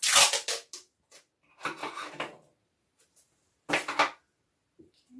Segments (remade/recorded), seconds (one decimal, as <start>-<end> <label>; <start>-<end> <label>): 0.0-1.8 recorded; 1.8-3.7 remade; 3.7-5.2 recorded